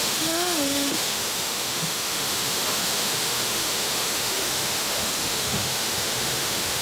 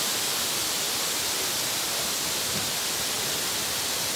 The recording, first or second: second